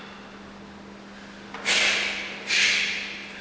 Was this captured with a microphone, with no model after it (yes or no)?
yes